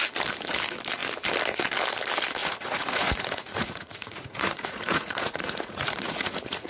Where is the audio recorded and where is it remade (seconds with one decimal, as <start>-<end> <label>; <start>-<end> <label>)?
0.0-2.4 recorded; 2.4-6.7 remade